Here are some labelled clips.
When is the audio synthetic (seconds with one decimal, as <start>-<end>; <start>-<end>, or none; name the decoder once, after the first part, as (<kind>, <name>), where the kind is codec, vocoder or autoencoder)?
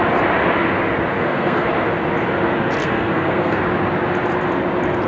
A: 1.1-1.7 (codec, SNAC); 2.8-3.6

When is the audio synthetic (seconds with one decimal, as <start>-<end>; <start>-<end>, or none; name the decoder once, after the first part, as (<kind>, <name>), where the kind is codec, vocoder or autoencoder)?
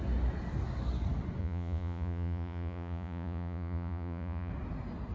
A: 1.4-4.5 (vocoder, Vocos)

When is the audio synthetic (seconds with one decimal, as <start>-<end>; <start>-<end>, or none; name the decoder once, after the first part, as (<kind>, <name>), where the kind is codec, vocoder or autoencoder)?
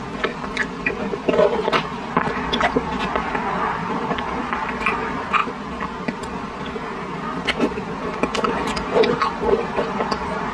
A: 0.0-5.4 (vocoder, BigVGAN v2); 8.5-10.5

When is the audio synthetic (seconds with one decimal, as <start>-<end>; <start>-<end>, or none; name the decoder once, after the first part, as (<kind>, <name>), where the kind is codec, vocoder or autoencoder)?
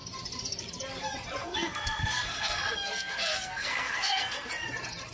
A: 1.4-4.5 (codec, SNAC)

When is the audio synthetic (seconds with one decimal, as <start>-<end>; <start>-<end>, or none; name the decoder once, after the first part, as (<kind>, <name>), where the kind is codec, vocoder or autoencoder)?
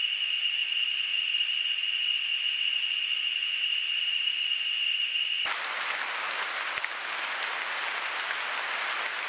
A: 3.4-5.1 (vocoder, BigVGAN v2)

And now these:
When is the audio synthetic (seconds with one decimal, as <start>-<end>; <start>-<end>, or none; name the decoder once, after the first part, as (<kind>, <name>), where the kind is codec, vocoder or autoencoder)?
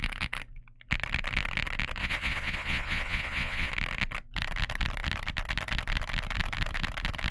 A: 2.0-3.7 (vocoder, Vocos)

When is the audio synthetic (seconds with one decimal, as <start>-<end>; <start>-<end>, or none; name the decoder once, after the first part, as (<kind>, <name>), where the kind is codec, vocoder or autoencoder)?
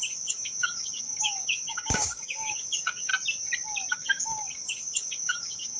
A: 0.0-3.1 (codec, DAC); 3.9-5.8